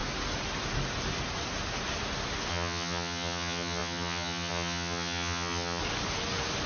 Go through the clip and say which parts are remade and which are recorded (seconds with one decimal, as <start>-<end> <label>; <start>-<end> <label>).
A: 0.0-2.5 recorded; 2.5-5.8 remade; 5.8-6.7 recorded